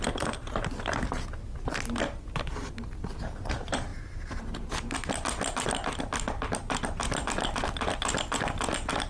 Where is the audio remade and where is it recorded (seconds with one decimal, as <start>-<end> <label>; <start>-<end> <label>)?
0.0-9.1 recorded